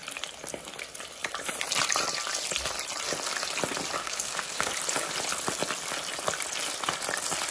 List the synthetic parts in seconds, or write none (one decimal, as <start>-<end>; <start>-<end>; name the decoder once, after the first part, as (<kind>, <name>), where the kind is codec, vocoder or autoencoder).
4.0-4.7 (codec, SNAC)